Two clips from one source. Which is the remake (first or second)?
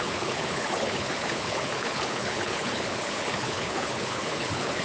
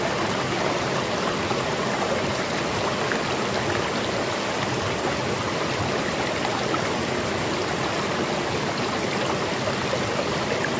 first